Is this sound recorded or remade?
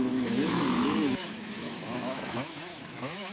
remade